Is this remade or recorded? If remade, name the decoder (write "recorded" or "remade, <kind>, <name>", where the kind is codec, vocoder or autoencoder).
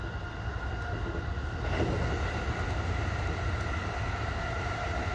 recorded